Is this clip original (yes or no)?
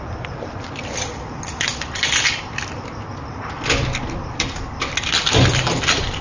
no